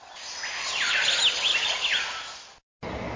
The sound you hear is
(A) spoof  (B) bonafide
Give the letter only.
B